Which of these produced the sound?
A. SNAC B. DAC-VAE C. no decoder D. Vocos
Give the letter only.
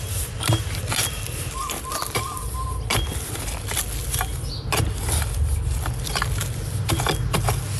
C